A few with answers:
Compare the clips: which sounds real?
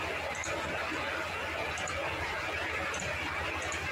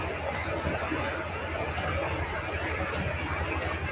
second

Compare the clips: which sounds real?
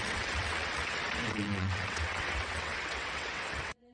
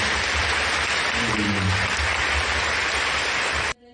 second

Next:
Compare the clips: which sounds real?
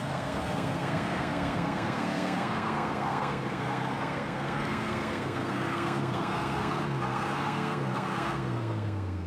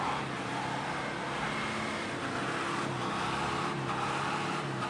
second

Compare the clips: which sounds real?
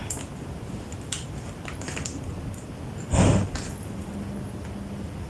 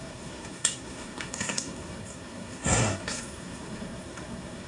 first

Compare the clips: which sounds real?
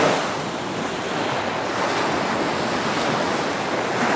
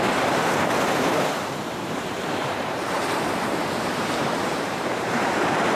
first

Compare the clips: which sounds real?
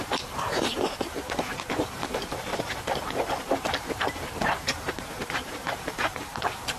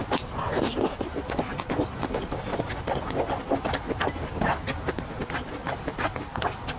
second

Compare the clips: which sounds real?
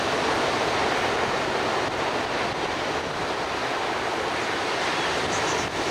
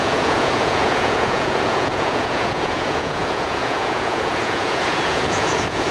first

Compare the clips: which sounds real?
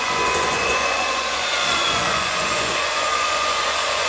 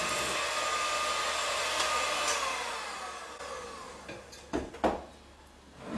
second